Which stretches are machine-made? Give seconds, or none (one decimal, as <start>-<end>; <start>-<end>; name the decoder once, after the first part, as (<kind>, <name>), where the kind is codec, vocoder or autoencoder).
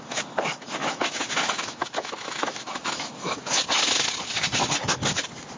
0.0-3.5 (autoencoder, DAC-VAE)